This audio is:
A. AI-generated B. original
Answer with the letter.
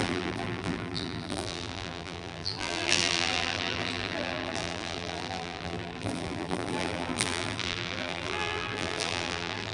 A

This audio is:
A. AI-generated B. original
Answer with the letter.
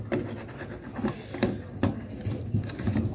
B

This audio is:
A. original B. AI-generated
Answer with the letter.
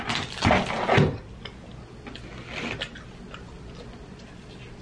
A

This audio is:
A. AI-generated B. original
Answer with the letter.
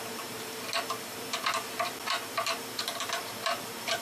A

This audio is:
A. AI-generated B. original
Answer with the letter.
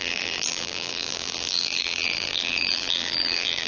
A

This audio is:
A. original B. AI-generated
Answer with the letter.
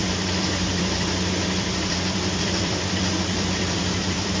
B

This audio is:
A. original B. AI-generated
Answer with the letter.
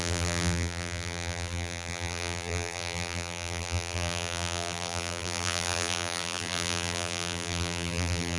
B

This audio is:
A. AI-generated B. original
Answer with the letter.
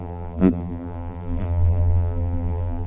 A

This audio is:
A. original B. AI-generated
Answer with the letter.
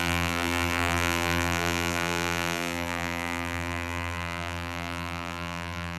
B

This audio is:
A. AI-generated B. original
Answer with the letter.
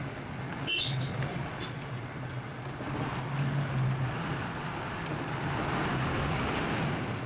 B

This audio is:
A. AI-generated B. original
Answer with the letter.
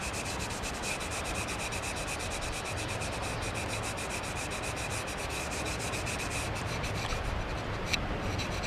A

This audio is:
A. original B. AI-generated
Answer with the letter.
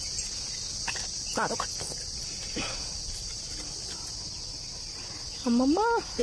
A